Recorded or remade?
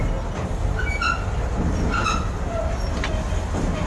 recorded